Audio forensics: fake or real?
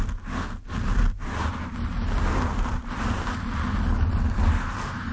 real